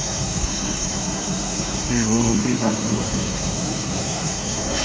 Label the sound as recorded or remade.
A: remade